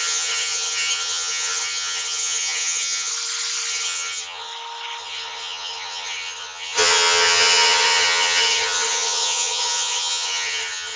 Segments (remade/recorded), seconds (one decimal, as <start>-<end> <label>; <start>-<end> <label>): 0.0-3.1 remade; 3.1-3.7 recorded; 3.7-4.5 remade; 4.5-5.0 recorded; 5.0-11.0 remade